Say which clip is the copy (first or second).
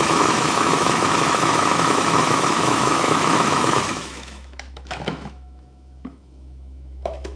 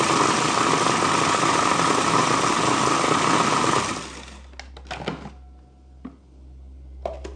first